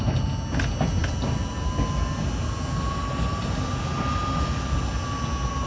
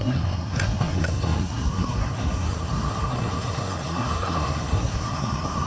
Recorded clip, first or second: first